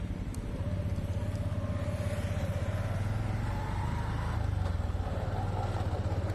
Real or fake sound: real